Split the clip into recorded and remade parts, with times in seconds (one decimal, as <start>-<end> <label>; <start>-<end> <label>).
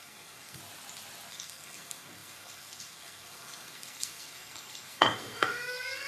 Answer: 0.0-0.6 remade; 0.6-1.3 recorded; 1.3-6.1 remade